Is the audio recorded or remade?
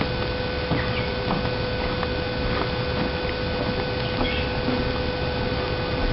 recorded